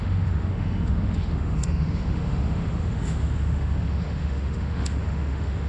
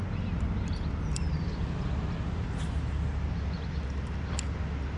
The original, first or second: second